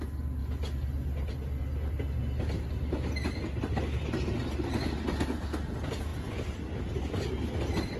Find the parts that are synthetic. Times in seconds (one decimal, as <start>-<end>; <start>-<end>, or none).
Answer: none